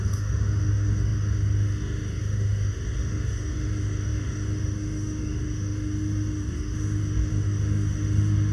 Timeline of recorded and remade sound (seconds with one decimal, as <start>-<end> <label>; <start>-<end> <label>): 0.0-8.5 remade